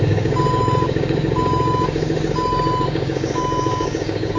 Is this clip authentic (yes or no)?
no